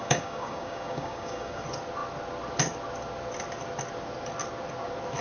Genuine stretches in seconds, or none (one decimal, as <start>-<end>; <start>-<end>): 1.6-5.2